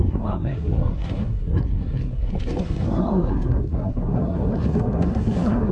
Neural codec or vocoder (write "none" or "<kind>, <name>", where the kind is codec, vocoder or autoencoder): codec, SNAC